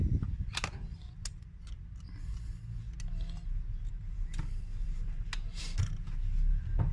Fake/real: real